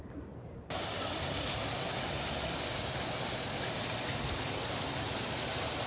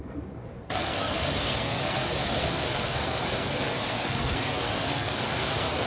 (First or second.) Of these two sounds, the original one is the first